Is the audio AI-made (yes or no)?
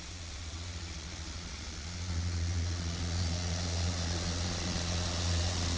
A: yes